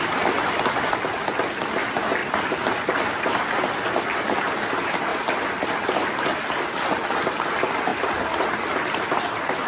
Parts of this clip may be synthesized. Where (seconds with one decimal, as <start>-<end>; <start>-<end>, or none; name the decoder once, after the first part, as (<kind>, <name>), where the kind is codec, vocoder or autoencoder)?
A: 2.2-3.5 (vocoder, BigVGAN v2); 5.1-6.6